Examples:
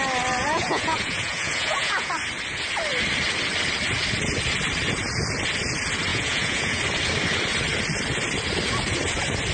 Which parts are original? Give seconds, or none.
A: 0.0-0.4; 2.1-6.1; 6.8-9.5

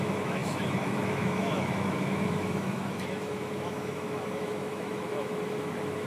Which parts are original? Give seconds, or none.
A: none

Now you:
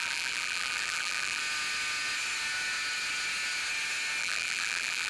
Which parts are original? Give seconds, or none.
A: 1.4-4.2

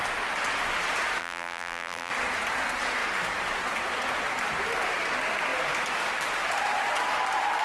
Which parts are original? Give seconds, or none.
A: 0.0-1.2; 2.1-7.6

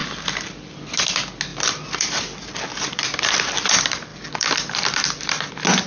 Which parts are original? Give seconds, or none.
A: 0.0-1.5; 3.0-4.1; 5.5-5.9

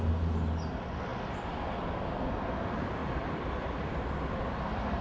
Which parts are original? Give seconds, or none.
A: 0.0-1.1; 1.6-3.0

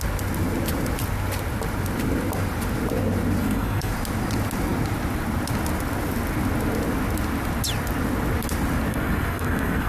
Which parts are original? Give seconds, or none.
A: 0.0-3.4; 3.9-8.9